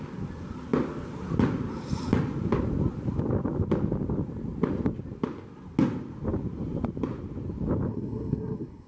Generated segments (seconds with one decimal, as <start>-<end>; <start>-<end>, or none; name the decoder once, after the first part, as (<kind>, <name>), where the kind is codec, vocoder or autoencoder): 7.9-8.9 (codec, SNAC)